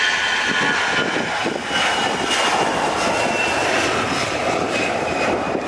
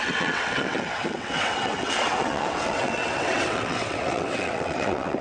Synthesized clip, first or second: second